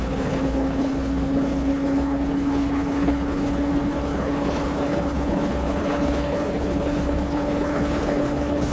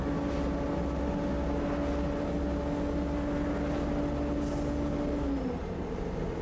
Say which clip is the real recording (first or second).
second